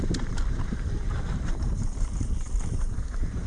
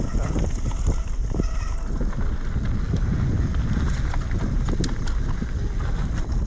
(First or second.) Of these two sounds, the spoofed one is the first